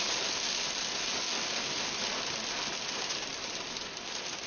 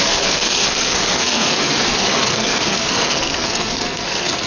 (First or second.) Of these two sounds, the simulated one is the second